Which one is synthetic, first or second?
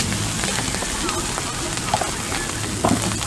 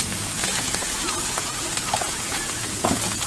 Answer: second